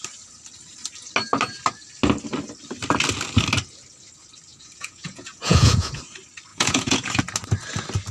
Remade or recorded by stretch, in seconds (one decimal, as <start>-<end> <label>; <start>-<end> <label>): 0.0-4.5 recorded; 4.5-6.0 remade; 6.0-6.5 recorded; 6.5-7.2 remade; 7.2-8.1 recorded